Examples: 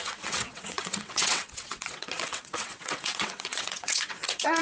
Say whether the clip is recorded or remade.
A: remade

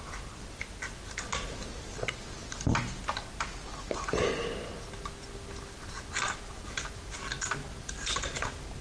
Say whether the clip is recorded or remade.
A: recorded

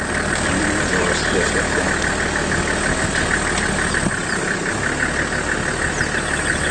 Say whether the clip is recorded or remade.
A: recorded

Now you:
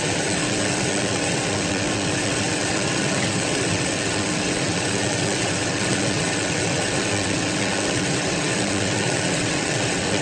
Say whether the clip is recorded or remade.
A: remade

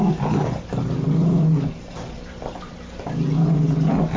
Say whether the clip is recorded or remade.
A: recorded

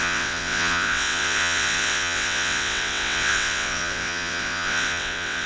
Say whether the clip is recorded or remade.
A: remade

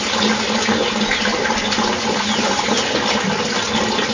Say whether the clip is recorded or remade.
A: recorded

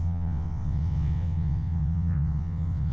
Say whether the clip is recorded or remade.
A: remade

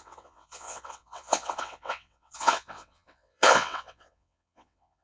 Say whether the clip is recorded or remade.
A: remade